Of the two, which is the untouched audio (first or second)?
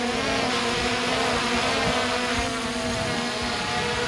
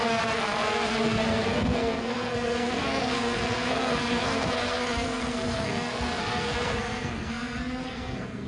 first